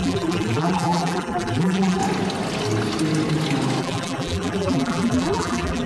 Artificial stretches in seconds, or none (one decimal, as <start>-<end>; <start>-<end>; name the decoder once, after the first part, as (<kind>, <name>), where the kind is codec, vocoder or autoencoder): 0.0-2.0 (vocoder, BigVGAN v2); 3.8-5.9